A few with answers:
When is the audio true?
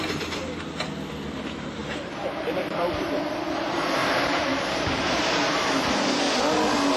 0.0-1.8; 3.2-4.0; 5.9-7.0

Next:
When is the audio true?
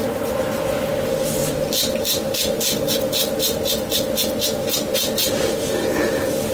0.0-6.5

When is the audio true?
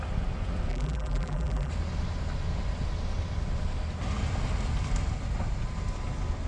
0.0-0.7; 1.7-6.5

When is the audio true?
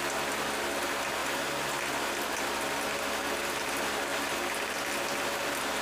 0.0-5.8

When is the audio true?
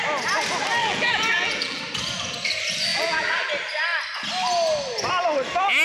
0.0-0.8; 1.8-2.9; 3.5-5.8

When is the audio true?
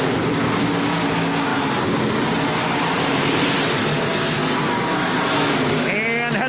0.0-1.5; 3.4-6.5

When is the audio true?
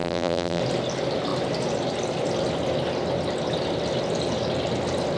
0.6-5.2